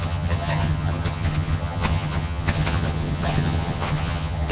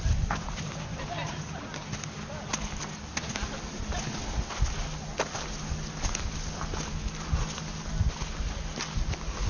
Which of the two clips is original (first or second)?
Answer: second